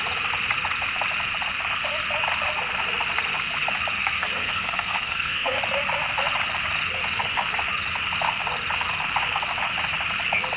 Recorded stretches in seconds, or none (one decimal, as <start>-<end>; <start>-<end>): 0.0-4.0; 5.6-10.6